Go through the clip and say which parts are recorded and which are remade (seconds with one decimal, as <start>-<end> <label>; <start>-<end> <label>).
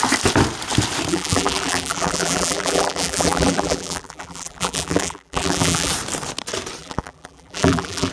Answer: 0.0-1.1 recorded; 1.1-5.9 remade; 5.9-6.8 recorded; 6.8-8.1 remade